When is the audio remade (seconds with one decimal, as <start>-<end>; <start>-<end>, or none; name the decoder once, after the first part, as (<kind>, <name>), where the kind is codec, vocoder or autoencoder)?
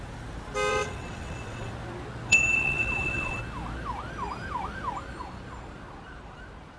0.7-1.7 (vocoder, WaveNeXt); 2.3-3.4